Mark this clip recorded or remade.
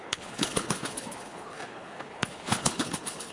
remade